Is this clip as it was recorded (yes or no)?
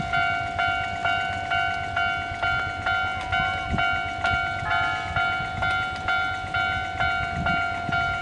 yes